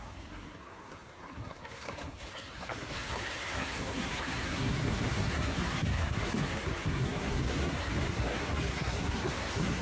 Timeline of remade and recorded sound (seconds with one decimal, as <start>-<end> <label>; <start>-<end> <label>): 0.0-9.8 remade